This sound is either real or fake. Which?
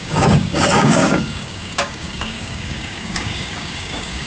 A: fake